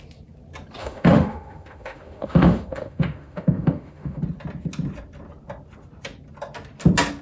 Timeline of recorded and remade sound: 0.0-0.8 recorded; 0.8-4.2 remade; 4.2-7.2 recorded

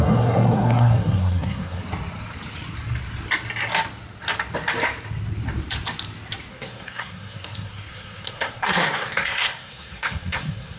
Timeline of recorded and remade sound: 0.0-1.8 remade; 1.8-6.5 recorded; 6.5-10.8 remade

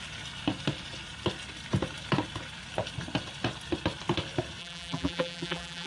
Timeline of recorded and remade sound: 0.0-4.6 recorded; 4.6-5.9 remade